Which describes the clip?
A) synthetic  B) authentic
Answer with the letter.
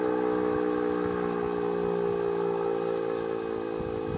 B